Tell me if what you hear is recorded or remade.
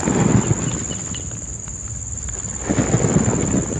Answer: recorded